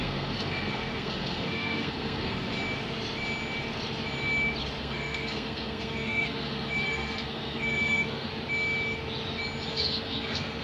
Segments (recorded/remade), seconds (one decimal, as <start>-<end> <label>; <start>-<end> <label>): 0.0-2.5 remade; 2.5-4.8 recorded; 4.8-8.3 remade; 8.3-9.7 recorded; 9.7-10.6 remade